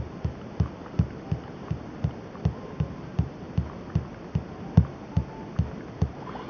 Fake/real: real